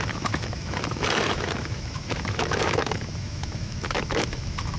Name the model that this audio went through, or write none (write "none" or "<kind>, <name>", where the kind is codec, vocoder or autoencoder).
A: autoencoder, DAC-VAE